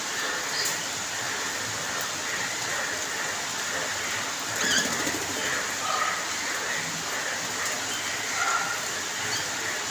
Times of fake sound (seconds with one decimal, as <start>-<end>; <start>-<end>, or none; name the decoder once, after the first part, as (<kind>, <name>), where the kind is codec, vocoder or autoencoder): none